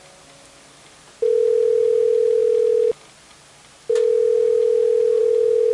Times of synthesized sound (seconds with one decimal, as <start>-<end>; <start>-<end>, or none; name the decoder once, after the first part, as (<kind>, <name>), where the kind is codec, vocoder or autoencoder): none